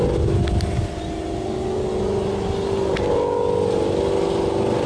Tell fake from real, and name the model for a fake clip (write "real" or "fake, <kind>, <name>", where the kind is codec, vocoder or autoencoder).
real